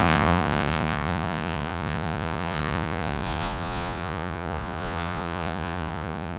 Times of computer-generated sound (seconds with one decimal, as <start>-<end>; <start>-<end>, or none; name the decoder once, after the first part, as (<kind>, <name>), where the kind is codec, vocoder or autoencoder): 0.0-6.4 (vocoder, Vocos)